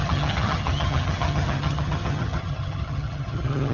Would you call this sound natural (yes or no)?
no